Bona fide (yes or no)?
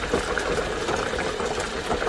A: no